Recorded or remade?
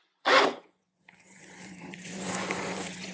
remade